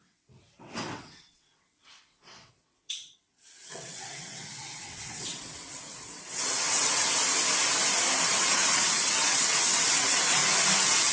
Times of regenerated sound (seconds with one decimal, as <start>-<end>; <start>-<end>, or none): 0.0-7.2; 8.2-10.4